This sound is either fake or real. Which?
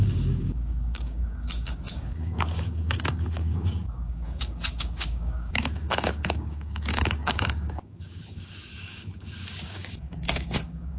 fake